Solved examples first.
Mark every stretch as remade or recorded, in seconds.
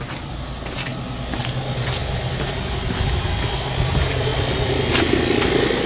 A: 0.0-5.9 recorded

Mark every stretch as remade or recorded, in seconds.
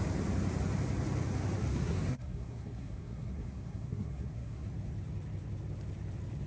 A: 0.0-1.7 recorded; 1.7-4.7 remade; 4.7-6.5 recorded